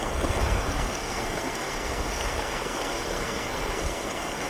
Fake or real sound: fake